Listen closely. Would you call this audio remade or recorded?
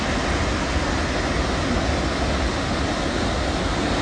recorded